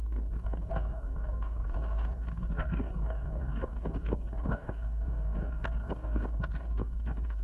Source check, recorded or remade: remade